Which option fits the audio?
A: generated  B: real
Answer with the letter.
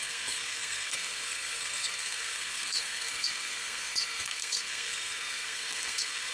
A